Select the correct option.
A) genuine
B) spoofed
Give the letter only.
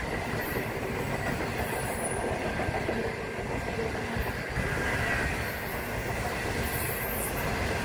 A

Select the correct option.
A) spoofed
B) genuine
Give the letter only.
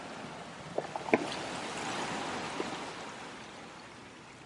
B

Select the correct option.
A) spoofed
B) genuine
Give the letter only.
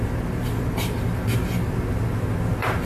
B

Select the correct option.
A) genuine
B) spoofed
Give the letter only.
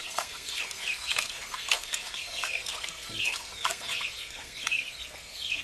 B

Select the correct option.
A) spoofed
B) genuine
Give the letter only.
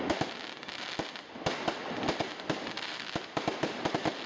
B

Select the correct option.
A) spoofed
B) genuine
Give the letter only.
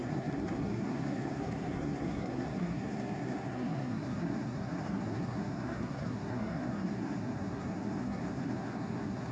A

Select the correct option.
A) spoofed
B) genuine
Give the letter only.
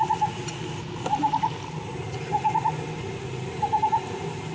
B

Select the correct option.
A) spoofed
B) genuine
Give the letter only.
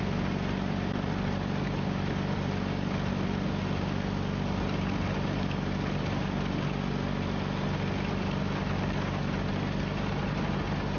B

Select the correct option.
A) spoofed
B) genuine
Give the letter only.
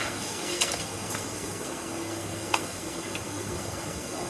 A